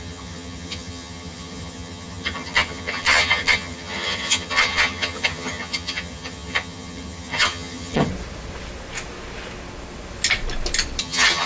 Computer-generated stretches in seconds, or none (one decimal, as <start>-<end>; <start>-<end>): 0.0-8.1; 11.0-11.5